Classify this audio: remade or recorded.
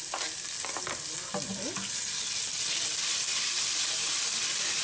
recorded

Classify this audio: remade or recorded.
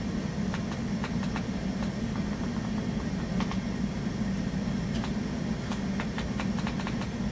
recorded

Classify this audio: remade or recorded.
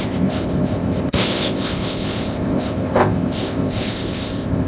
remade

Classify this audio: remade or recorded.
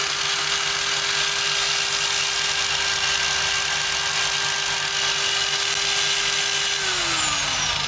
recorded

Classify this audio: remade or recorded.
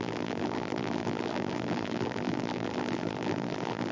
remade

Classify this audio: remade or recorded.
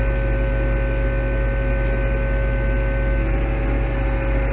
recorded